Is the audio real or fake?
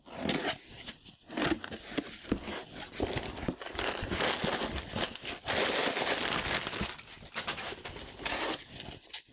real